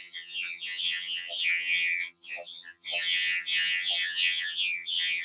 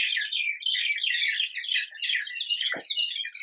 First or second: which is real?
second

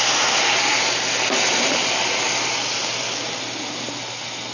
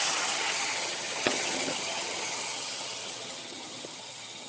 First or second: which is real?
first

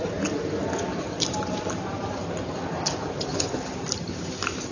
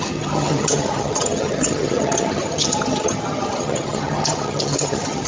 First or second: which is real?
first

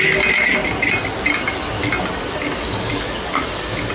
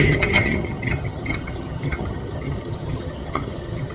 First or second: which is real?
first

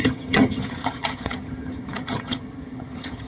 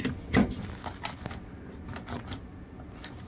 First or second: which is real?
second